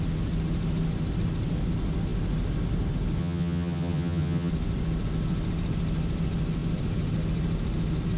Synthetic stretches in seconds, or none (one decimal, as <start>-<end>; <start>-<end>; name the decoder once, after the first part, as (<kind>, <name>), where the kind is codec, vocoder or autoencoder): 3.2-4.5 (vocoder, HiFi-GAN)